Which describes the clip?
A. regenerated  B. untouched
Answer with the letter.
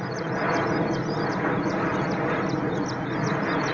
B